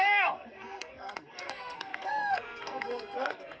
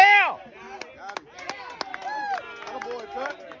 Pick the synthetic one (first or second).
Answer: first